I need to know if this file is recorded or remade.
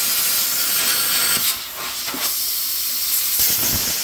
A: recorded